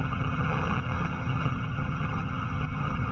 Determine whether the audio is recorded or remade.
remade